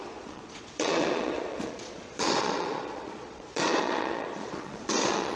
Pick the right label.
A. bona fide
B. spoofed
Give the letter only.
B